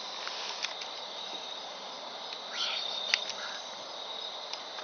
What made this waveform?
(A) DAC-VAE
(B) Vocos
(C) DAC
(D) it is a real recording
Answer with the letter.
D